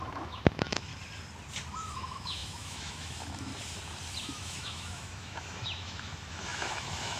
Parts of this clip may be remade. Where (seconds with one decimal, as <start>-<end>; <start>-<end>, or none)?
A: 0.0-0.9; 1.7-3.5; 4.2-7.2